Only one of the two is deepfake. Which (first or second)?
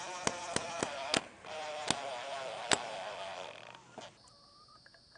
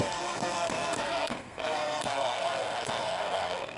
second